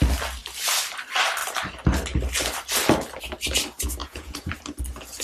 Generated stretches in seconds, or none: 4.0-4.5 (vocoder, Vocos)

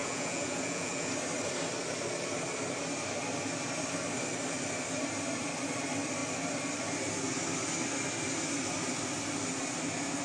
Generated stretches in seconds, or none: 0.0-1.1 (vocoder, Vocos)

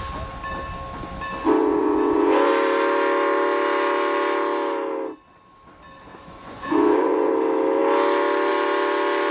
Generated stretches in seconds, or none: 1.6-2.5 (vocoder, Vocos); 6.1-7.3

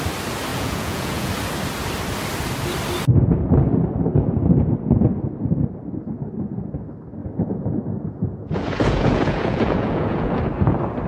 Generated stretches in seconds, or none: 0.5-1.3 (vocoder, Vocos); 7.2-10.4

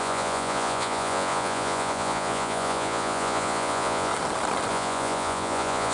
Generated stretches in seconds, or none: 0.0-4.1 (vocoder, Vocos); 4.7-5.9